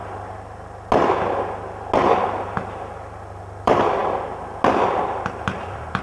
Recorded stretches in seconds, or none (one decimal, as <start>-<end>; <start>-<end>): 0.0-2.2; 4.0-5.0